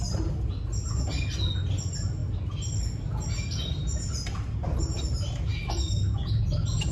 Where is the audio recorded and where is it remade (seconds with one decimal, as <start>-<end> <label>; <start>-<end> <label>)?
0.0-6.9 recorded